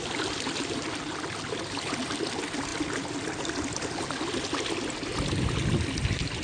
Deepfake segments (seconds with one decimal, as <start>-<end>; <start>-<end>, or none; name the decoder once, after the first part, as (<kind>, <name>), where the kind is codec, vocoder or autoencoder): none